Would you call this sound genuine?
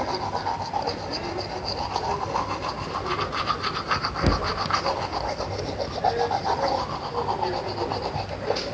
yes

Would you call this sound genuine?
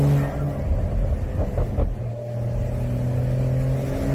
yes